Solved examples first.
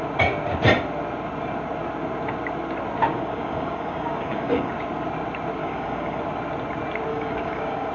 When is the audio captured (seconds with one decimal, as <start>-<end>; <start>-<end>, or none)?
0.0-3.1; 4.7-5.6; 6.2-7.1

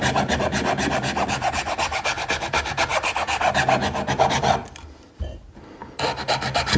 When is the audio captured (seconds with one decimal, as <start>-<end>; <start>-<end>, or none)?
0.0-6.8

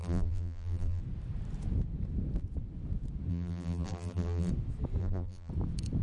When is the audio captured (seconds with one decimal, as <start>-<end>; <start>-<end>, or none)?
1.0-3.3; 4.5-5.0; 5.5-6.0

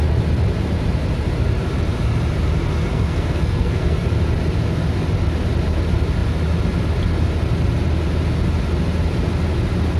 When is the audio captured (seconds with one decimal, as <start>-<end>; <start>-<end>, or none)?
0.0-2.9; 4.0-10.0

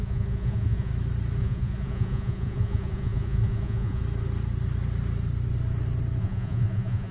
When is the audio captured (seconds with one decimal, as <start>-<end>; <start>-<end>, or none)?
0.9-1.4; 4.0-6.2

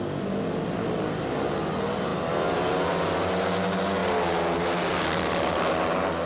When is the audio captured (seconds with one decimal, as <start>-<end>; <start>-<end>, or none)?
0.0-6.3

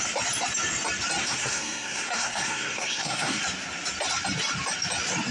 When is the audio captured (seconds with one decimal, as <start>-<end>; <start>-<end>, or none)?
0.0-1.2; 3.4-5.3